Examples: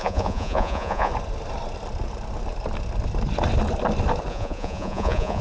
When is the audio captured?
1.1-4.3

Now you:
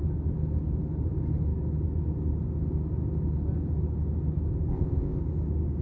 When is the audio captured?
0.0-4.7; 5.2-5.8

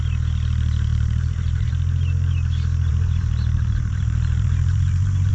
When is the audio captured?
0.0-0.9; 1.7-2.9

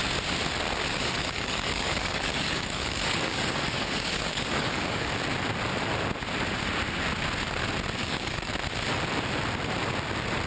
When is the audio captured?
0.0-0.9; 5.1-8.0; 8.5-10.5

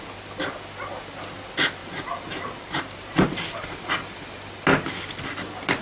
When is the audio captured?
0.0-1.8; 4.0-5.8

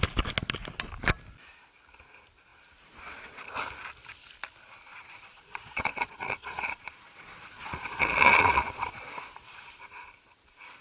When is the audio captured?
0.0-4.9; 9.7-10.8

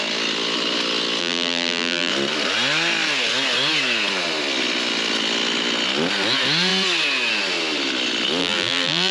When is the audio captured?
0.0-1.2; 2.1-8.4